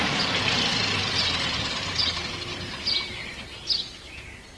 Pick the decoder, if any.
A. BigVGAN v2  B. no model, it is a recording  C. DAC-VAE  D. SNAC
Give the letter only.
B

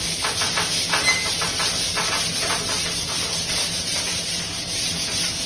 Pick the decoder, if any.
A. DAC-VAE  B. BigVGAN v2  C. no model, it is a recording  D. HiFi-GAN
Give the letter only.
C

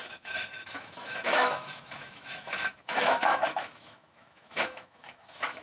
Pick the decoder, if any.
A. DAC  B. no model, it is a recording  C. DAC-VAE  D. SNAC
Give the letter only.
C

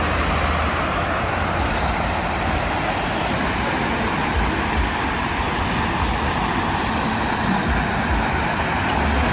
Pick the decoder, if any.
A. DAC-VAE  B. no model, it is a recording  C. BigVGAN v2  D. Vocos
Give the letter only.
B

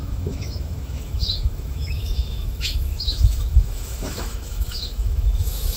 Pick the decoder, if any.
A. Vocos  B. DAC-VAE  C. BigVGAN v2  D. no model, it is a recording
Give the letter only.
B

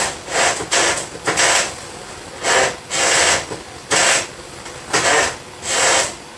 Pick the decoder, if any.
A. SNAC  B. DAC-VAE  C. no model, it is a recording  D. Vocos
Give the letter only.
C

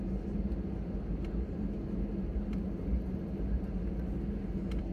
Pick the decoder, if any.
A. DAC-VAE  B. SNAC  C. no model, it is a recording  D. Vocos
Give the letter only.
C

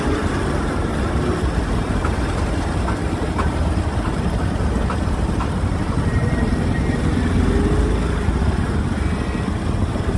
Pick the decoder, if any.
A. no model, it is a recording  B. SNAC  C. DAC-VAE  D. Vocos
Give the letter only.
A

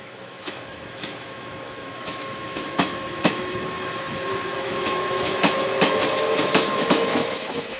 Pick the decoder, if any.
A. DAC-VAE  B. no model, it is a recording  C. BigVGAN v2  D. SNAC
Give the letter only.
A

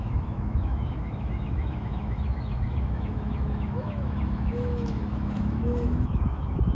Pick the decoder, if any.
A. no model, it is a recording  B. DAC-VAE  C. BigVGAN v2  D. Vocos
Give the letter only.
B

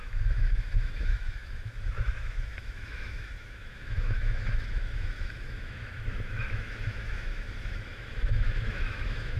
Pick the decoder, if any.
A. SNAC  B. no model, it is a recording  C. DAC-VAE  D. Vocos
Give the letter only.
C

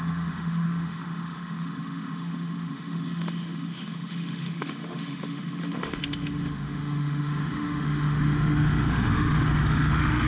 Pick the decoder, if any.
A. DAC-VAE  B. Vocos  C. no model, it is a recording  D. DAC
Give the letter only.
A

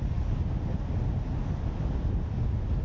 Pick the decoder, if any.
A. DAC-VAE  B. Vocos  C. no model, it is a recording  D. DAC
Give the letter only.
C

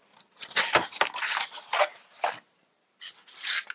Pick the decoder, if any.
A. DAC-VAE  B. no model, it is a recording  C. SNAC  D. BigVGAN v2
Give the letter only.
B